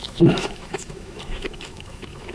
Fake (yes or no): yes